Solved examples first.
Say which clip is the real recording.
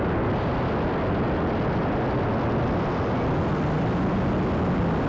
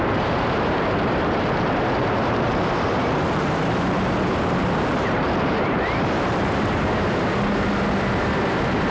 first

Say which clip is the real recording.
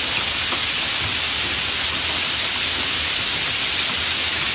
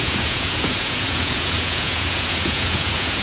first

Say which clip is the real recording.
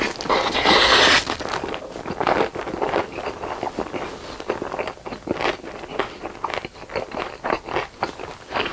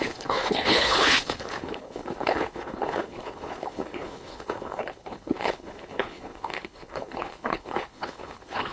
first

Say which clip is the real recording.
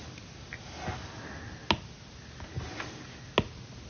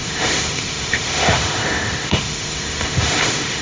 first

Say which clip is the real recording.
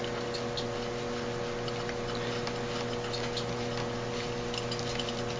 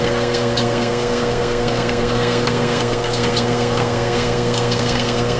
first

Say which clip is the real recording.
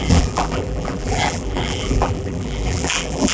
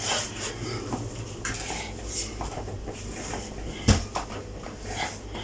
second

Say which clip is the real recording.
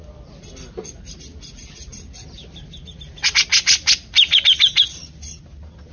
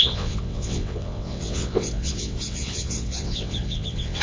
first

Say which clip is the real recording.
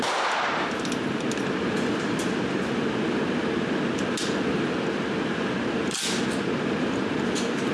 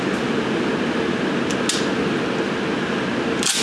second